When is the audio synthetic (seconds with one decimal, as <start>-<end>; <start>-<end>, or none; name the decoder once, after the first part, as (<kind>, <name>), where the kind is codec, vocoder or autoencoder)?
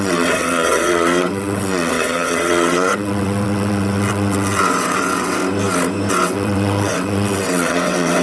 0.0-5.4 (vocoder, WaveNeXt); 6.1-8.2